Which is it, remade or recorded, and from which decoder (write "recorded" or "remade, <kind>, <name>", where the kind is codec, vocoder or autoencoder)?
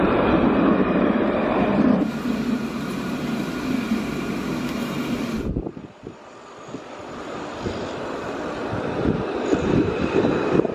remade, vocoder, BigVGAN v2